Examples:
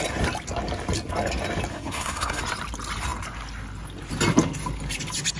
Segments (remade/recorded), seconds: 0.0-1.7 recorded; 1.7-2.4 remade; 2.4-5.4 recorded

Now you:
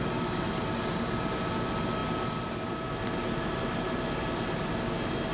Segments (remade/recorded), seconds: 0.0-5.3 recorded

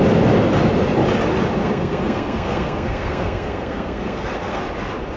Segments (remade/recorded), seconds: 0.0-1.6 recorded; 1.6-4.6 remade; 4.6-5.2 recorded

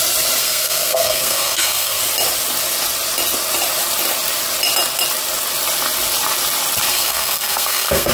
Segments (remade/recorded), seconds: 0.0-0.4 recorded; 0.4-2.0 remade; 2.0-6.9 recorded; 6.9-8.1 remade

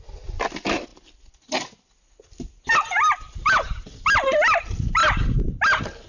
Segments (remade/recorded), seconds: 0.0-6.1 recorded

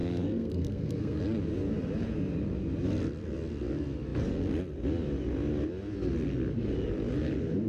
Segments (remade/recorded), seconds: 0.0-1.2 remade; 1.2-7.7 recorded

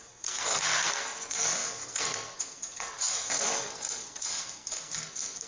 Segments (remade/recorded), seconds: 0.0-5.5 remade

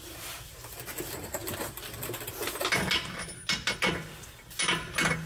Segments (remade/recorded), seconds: 0.0-5.3 recorded